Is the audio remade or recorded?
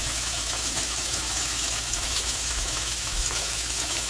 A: remade